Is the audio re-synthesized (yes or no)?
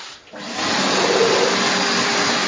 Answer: no